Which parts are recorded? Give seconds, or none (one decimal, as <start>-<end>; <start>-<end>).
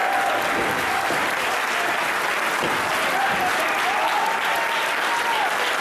0.0-5.8